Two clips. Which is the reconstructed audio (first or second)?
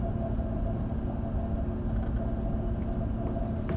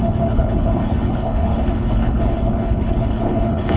second